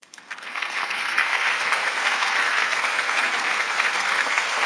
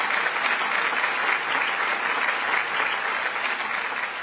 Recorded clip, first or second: second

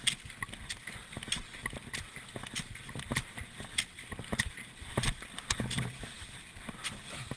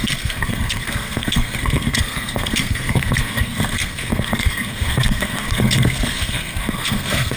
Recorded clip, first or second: first